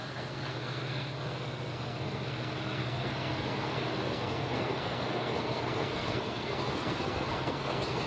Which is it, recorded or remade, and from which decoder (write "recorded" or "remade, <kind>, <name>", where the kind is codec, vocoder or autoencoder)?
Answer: remade, codec, SNAC